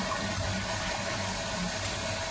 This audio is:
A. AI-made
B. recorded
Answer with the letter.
B